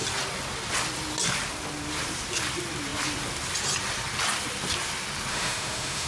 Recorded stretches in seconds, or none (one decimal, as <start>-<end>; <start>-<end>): 0.0-5.3